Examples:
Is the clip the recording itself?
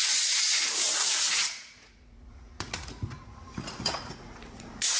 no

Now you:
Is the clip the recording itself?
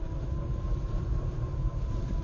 no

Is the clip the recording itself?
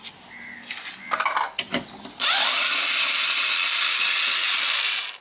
yes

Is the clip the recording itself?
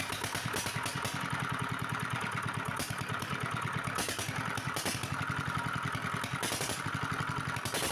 yes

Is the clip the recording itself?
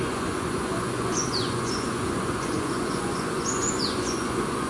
no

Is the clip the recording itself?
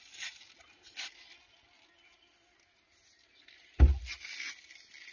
yes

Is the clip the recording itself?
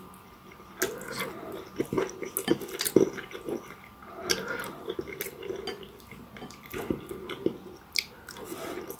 yes